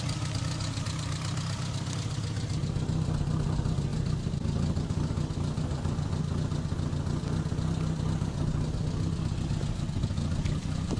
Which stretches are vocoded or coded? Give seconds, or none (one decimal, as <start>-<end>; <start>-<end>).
3.9-6.2